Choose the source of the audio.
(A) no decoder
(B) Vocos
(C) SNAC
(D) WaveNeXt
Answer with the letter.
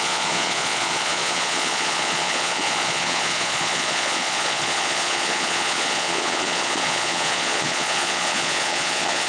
B